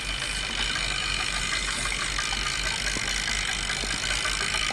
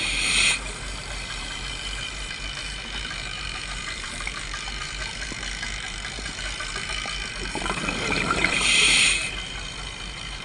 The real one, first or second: first